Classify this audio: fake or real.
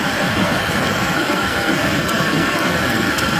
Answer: fake